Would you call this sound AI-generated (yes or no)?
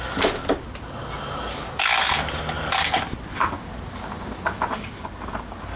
no